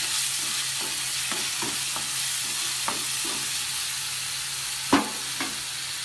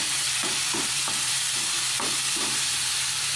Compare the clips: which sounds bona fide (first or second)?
first